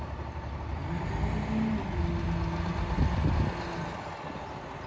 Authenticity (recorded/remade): recorded